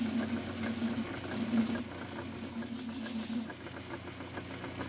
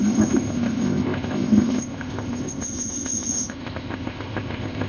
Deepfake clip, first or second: second